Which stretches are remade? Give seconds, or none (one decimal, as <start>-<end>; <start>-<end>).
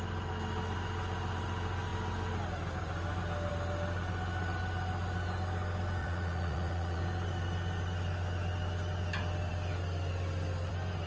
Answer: 6.0-7.0